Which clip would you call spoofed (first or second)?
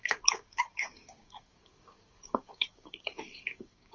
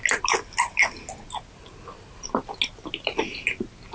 first